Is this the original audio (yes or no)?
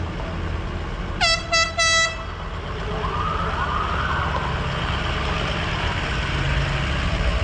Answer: yes